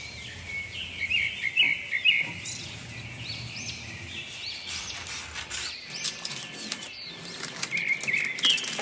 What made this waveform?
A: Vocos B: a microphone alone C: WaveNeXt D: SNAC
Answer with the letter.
B